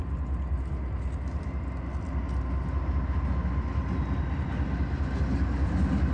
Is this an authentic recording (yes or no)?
yes